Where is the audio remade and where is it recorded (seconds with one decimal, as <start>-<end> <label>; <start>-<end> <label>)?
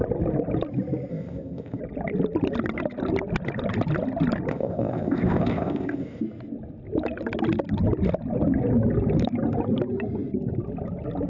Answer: 0.0-1.1 recorded; 1.1-1.8 remade; 1.8-4.5 recorded; 4.5-6.2 remade; 6.2-11.3 recorded